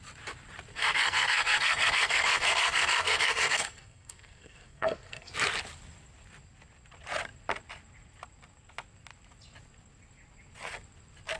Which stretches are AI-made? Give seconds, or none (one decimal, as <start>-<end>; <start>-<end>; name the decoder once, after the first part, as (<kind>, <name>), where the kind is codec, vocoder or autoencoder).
0.7-5.3 (codec, SNAC)